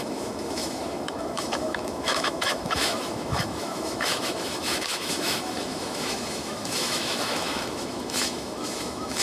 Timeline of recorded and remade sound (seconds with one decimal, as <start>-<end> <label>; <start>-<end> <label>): 0.0-9.2 remade